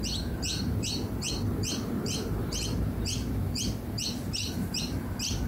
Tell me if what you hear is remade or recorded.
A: remade